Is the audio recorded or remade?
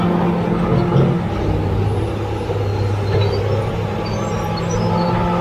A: recorded